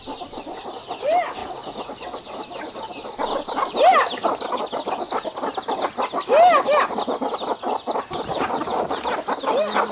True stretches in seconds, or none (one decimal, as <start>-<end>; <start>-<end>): 0.0-1.4; 2.2-8.3; 9.0-9.9